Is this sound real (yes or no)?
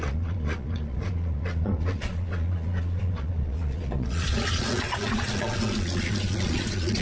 no